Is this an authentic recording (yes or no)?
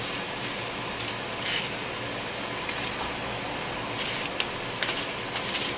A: yes